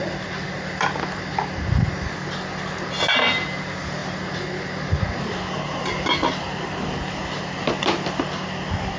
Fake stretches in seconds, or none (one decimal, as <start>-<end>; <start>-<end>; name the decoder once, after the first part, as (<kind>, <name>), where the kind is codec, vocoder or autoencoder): none